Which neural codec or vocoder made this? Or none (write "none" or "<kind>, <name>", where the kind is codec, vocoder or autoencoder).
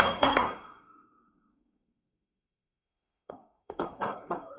codec, SNAC